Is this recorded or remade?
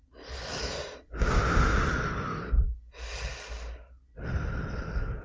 recorded